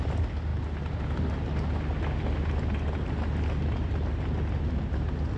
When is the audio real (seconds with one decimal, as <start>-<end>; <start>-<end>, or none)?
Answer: 0.0-5.4